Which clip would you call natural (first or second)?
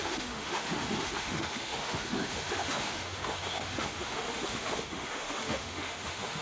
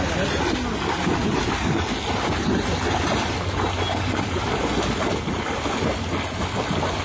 second